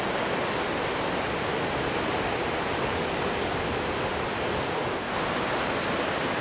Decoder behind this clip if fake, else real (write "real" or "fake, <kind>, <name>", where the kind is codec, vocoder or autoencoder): real